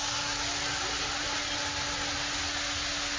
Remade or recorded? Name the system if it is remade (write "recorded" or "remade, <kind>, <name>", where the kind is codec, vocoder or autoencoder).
recorded